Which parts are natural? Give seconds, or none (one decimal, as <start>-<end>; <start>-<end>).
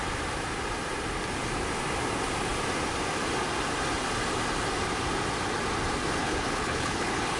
0.0-6.2